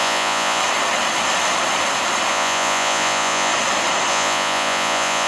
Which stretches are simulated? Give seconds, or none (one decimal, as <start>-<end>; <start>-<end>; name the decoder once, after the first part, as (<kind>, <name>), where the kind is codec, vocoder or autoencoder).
0.0-0.6 (vocoder, Vocos); 2.3-3.5; 4.1-5.3